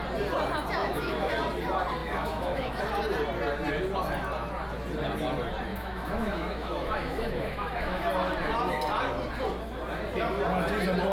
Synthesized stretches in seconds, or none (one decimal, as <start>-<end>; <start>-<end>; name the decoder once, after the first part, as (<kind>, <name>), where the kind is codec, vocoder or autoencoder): 0.8-1.3 (autoencoder, DAC-VAE); 2.0-2.8; 5.7-8.1